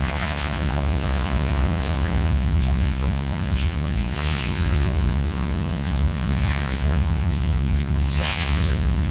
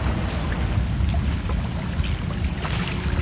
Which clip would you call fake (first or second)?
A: first